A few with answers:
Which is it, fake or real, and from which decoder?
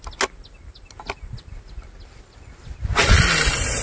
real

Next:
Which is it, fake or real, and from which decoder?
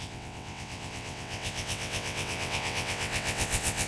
fake, vocoder, WaveNeXt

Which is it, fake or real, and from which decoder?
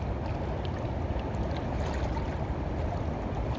real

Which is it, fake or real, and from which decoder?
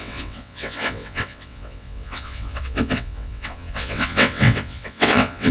fake, vocoder, WaveNeXt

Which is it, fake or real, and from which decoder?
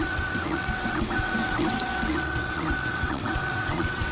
fake, vocoder, WaveNeXt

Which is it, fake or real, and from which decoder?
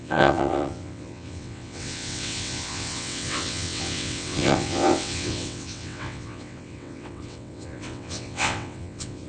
fake, vocoder, WaveNeXt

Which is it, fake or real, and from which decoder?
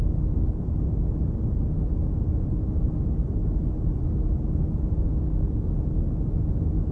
real